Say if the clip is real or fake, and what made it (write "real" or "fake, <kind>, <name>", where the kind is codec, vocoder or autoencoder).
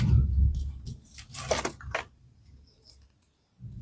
real